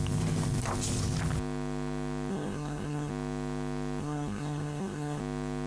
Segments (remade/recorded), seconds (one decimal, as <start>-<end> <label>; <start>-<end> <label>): 0.0-2.3 recorded; 2.3-3.1 remade; 3.1-4.0 recorded; 4.0-5.2 remade; 5.2-5.7 recorded